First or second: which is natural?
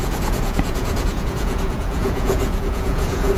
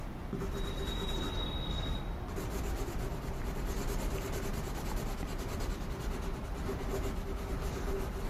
second